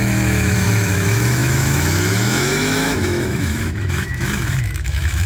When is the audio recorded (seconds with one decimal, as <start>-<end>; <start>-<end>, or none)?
none